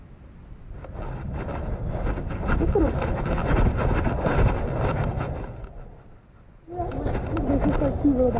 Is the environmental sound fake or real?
real